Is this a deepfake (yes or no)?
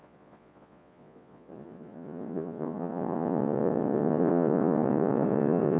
yes